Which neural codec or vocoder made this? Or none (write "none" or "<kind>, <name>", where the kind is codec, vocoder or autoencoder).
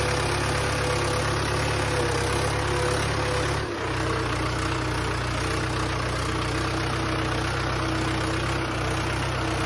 none